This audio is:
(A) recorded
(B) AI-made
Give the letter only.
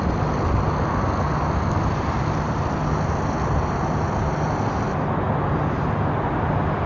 A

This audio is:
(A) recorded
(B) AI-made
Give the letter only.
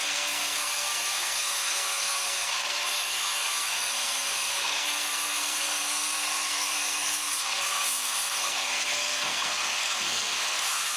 B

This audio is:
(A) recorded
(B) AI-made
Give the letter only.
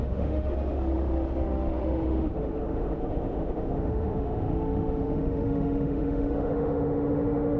B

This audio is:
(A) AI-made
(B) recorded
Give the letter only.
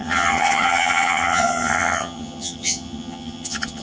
A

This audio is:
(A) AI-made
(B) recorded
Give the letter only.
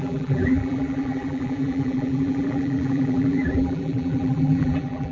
A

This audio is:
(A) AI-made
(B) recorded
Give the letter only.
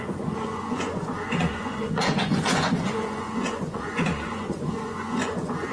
A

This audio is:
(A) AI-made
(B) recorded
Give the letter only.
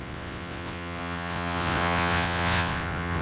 A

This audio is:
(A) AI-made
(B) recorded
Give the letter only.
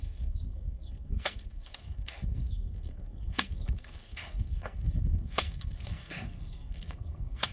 A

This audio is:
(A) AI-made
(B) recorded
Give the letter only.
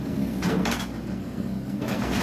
A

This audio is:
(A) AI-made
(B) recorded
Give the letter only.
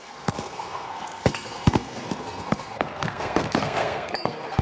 A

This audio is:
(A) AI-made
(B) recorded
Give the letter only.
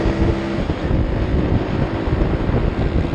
B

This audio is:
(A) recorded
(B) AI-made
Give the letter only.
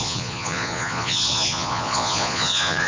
B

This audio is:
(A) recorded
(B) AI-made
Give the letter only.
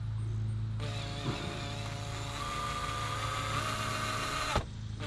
A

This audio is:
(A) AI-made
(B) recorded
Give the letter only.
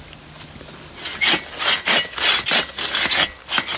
B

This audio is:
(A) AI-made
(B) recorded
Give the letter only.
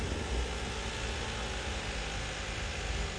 B